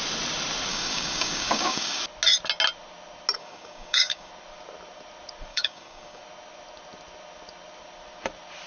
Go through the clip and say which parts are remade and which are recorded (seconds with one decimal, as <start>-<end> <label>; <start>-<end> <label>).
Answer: 0.0-0.7 recorded; 0.7-2.0 remade; 2.0-3.4 recorded; 3.4-4.3 remade; 4.3-5.5 recorded; 5.5-6.2 remade; 6.2-8.7 recorded